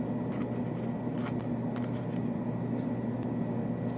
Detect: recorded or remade recorded